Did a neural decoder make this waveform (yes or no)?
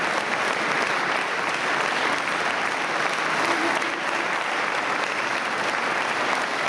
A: no